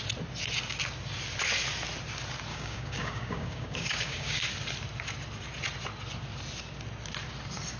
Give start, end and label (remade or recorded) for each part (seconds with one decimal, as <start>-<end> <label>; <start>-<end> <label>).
0.0-2.5 recorded; 2.5-4.4 remade; 4.4-7.8 recorded